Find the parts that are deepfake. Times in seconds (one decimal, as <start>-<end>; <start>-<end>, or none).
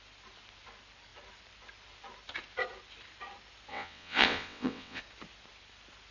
3.7-5.0